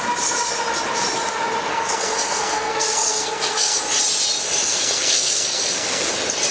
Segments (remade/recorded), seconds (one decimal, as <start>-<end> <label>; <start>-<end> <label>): 0.0-1.7 recorded; 1.7-3.8 remade; 3.8-4.7 recorded; 4.7-6.1 remade; 6.1-6.5 recorded